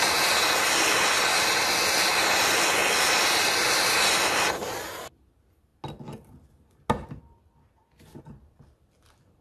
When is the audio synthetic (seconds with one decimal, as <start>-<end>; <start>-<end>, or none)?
none